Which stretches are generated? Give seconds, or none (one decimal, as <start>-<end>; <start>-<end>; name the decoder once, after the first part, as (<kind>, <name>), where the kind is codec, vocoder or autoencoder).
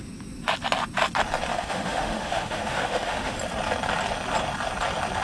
1.5-3.4 (autoencoder, DAC-VAE)